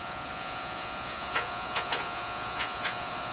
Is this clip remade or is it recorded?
remade